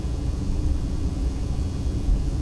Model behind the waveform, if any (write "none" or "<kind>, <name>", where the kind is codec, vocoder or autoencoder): vocoder, Vocos